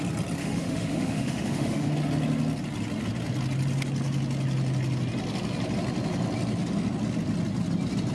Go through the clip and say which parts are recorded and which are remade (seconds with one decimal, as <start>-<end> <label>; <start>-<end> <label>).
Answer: 0.0-0.4 recorded; 0.4-1.9 remade; 1.9-8.1 recorded